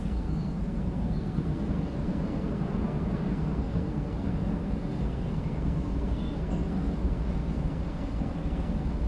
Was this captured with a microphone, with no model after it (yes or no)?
no